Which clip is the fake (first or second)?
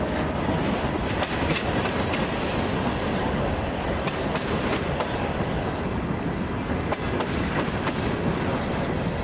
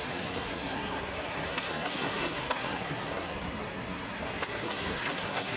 second